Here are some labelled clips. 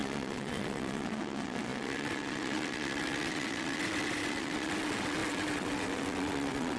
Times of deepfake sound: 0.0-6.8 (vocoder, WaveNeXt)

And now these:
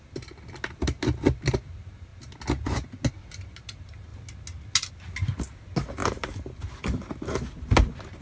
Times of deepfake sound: none

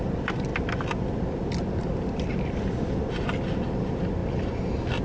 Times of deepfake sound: none

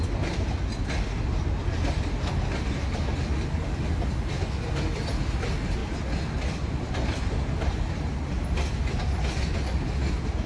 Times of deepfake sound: none

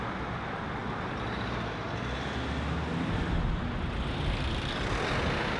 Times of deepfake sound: none

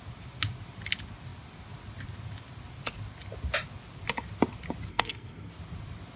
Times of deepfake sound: 4.9-5.5 (codec, SNAC)

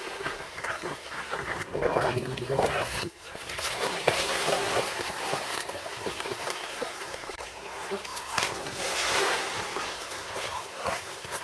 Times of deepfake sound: 0.0-11.4 (codec, SNAC)